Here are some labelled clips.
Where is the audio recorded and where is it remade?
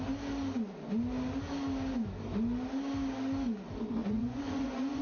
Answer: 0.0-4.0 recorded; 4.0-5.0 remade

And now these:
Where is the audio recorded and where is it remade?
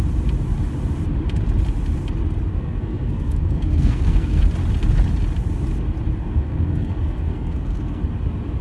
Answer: 0.0-2.5 recorded; 2.5-4.4 remade; 4.4-6.2 recorded; 6.2-8.0 remade; 8.0-8.6 recorded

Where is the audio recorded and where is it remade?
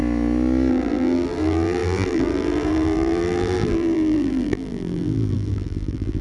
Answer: 0.0-0.7 recorded; 0.7-6.2 remade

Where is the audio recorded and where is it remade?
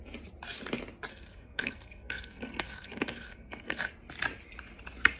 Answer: 0.0-1.1 recorded; 1.1-3.9 remade; 3.9-5.2 recorded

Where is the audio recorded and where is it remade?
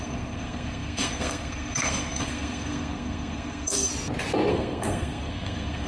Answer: 0.0-3.9 remade; 3.9-4.5 recorded; 4.5-5.9 remade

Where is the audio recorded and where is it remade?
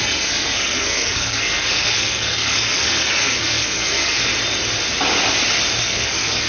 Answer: 0.0-4.3 remade; 4.3-5.8 recorded; 5.8-6.5 remade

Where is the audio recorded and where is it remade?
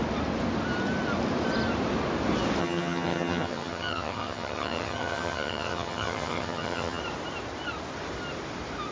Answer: 0.0-2.6 recorded; 2.6-7.0 remade; 7.0-8.9 recorded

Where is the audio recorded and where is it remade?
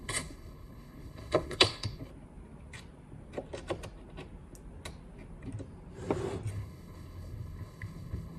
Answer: 0.0-2.1 remade; 2.1-6.5 recorded; 6.5-8.4 remade